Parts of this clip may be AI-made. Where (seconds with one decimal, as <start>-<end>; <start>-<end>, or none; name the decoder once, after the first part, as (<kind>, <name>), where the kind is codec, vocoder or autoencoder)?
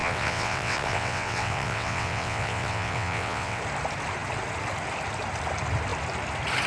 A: 0.0-3.6 (vocoder, WaveNeXt)